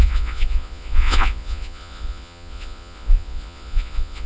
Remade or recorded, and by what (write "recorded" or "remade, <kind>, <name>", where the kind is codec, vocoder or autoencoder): remade, vocoder, Vocos